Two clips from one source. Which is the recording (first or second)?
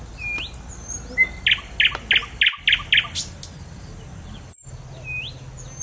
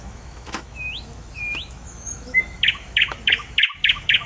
first